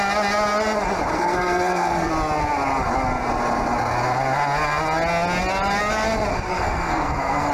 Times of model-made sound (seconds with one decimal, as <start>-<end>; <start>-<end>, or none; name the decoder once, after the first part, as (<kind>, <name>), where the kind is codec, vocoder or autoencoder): 1.1-2.1 (codec, SNAC); 6.3-7.5

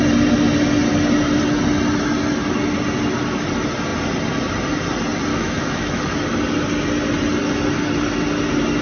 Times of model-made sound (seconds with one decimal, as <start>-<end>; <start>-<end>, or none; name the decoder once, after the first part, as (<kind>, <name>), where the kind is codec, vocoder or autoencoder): 5.3-6.0 (autoencoder, DAC-VAE)

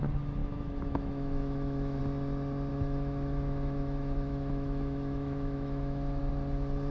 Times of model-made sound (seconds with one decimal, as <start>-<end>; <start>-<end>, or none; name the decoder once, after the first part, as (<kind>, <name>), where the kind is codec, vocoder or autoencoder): 0.4-2.0 (autoencoder, DAC-VAE); 2.7-6.2

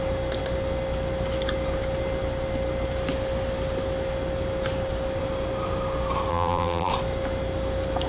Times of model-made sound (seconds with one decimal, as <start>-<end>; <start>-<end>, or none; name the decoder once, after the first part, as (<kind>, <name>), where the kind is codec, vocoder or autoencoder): 6.3-6.9 (vocoder, BigVGAN v2)

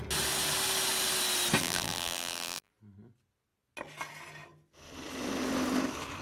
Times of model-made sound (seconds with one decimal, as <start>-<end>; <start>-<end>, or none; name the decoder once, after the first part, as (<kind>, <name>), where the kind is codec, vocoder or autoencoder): 1.6-2.7 (vocoder, BigVGAN v2)

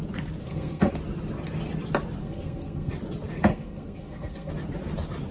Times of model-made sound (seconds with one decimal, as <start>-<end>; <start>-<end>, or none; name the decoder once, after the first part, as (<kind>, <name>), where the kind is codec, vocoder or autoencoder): 0.4-0.9 (codec, SNAC); 2.2-2.9; 3.5-4.5